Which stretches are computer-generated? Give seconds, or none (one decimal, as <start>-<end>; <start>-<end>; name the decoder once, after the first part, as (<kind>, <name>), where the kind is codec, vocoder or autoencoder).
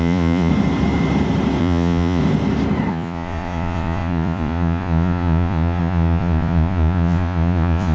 0.0-0.5 (vocoder, Vocos); 1.6-2.2; 2.9-7.9